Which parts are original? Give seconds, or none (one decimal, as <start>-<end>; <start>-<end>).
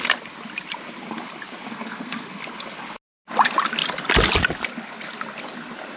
0.0-1.7; 2.4-6.0